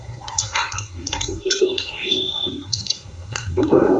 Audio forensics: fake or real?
fake